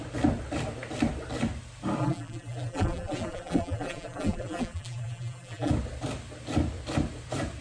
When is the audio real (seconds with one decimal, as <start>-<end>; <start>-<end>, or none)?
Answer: 0.0-2.0; 5.7-7.6

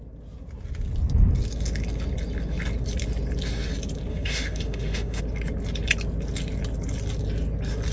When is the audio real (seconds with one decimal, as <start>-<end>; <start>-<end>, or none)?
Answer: 0.0-4.1; 5.2-7.9

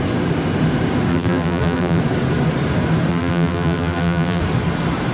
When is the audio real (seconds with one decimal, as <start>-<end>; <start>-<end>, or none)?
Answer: 0.0-1.1; 2.0-3.1; 4.4-5.1

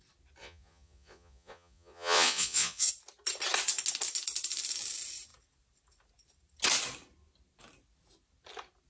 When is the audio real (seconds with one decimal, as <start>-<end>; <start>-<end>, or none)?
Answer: 0.0-0.4; 2.9-8.9

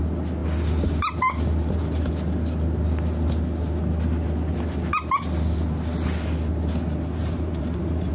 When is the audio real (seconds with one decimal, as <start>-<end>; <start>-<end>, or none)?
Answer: 0.0-7.2

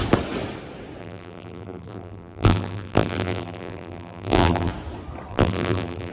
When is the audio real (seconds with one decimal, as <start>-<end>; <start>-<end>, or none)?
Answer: 0.0-1.0; 4.7-5.3